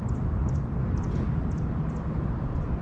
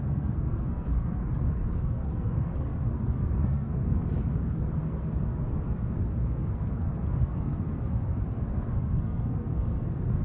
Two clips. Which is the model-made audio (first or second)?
second